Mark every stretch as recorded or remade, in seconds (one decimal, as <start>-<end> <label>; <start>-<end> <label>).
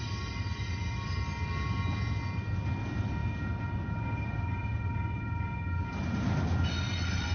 0.0-7.3 recorded